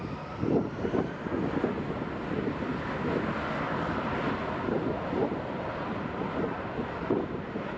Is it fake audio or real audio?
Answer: real